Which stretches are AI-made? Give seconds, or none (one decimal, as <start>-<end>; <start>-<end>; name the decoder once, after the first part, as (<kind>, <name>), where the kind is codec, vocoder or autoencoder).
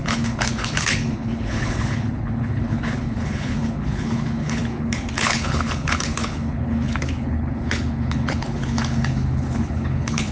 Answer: 0.0-10.3 (codec, HILCodec)